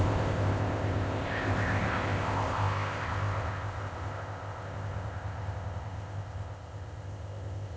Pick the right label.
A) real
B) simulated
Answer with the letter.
B